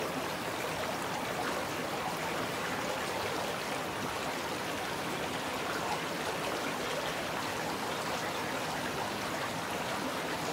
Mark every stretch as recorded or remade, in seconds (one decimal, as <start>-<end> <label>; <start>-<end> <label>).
0.0-10.5 recorded